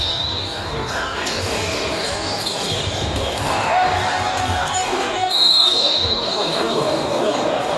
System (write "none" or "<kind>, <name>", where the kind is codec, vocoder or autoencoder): codec, DAC